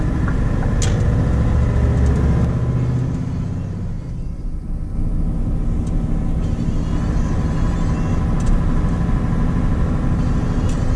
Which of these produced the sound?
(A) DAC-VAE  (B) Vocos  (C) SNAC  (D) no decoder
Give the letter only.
D